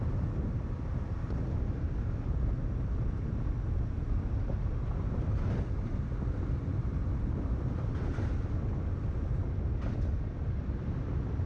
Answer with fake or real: real